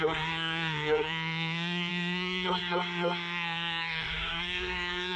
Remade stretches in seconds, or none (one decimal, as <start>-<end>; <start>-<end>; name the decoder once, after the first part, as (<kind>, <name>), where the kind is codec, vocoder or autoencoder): 0.0-5.2 (codec, SNAC)